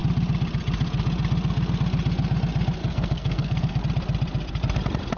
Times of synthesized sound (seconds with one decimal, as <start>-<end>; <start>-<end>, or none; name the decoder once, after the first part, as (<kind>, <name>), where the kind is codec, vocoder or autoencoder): 2.8-3.8 (codec, SNAC)